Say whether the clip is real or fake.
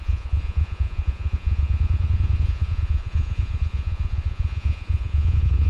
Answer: fake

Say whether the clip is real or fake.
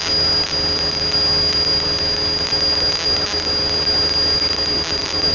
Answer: real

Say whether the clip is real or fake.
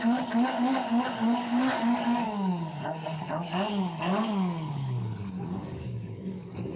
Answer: fake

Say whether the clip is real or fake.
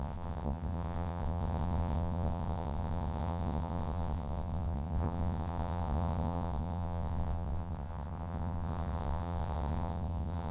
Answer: fake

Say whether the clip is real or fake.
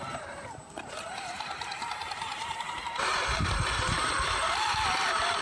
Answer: fake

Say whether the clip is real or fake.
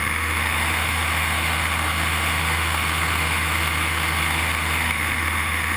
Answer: fake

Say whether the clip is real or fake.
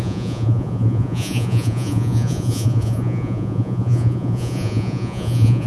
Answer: fake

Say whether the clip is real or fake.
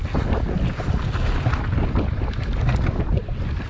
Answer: real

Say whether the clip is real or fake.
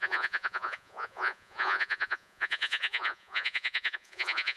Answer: fake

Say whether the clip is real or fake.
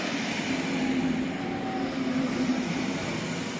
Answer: real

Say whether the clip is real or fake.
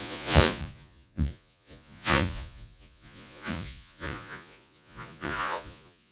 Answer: fake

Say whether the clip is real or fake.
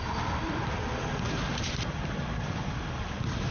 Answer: fake